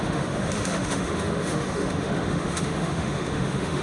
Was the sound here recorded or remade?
remade